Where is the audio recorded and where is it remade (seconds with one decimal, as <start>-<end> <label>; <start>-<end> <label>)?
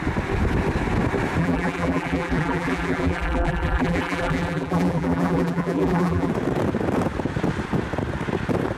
0.0-1.4 recorded; 1.4-6.3 remade; 6.3-8.8 recorded